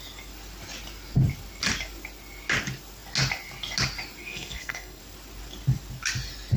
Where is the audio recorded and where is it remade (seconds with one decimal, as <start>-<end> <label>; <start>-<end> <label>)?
0.0-4.2 recorded; 4.2-5.0 remade; 5.0-6.6 recorded